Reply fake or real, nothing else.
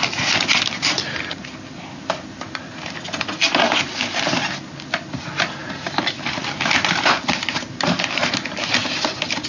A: real